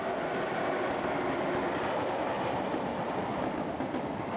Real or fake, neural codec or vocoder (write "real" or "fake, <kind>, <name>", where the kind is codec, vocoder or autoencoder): real